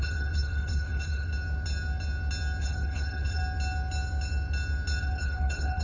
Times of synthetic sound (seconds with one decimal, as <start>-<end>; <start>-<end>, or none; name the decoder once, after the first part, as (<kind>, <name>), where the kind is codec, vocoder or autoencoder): 0.0-1.3 (codec, HILCodec); 2.6-3.4; 5.0-5.8